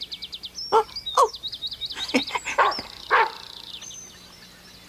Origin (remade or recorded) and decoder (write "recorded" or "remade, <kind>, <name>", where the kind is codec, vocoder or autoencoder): recorded